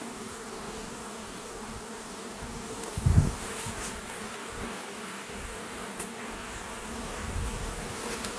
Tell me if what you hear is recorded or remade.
remade